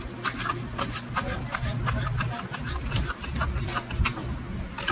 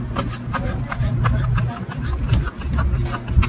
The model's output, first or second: first